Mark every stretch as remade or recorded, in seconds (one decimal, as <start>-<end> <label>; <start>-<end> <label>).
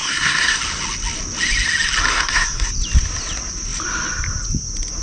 0.0-0.6 remade; 0.6-2.1 recorded; 2.1-2.7 remade; 2.7-5.0 recorded